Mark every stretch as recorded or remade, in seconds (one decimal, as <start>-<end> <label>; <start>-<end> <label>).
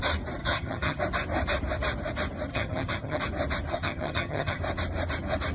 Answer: 0.0-0.4 recorded; 0.4-1.0 remade; 1.0-2.5 recorded; 2.5-3.2 remade; 3.2-3.7 recorded; 3.7-4.6 remade; 4.6-5.5 recorded